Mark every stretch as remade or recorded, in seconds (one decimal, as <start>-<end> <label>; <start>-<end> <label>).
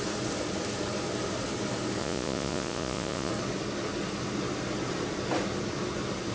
0.0-2.0 recorded; 2.0-3.3 remade; 3.3-6.3 recorded